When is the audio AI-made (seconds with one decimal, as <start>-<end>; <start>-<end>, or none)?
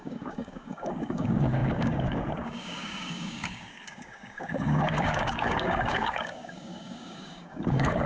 0.0-8.1